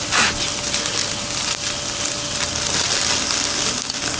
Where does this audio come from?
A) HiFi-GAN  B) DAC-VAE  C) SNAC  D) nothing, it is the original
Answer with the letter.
D